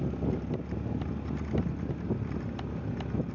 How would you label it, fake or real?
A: real